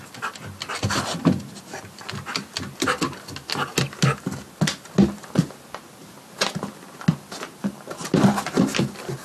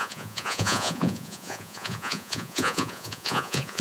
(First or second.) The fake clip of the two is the second